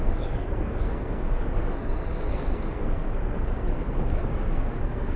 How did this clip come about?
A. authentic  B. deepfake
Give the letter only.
B